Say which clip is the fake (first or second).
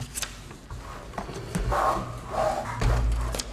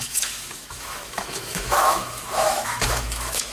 second